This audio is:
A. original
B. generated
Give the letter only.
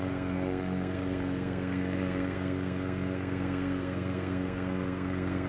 B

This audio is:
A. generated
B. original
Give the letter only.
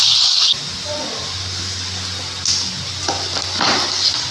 B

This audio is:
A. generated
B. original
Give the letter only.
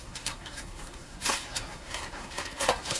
A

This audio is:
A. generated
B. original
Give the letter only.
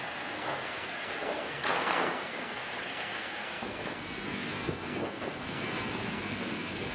A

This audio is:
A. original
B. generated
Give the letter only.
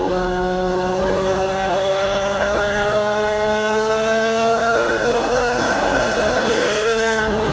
B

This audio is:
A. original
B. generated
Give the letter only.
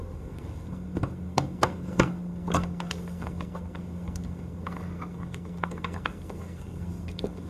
B